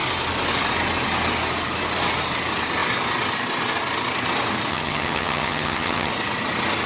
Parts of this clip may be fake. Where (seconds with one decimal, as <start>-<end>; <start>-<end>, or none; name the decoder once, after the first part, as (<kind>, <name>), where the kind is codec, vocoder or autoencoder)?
4.7-6.1 (vocoder, HiFi-GAN)